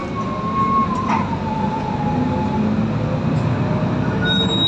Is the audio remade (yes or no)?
no